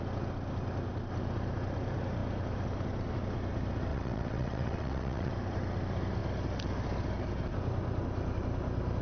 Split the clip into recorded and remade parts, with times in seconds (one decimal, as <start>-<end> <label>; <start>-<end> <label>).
0.0-3.9 recorded; 3.9-5.3 remade; 5.3-9.0 recorded